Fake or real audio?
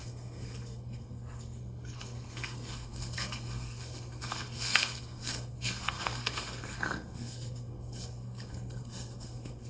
fake